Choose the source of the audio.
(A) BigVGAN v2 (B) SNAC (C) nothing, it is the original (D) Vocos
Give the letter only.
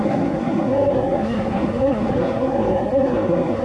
B